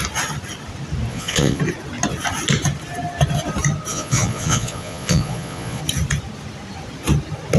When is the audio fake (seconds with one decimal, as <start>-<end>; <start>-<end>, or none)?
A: 1.1-1.6; 3.9-5.8